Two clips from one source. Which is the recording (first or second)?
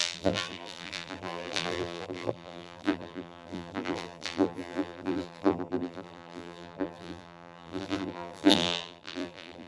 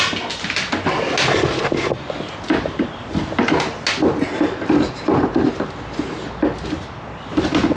second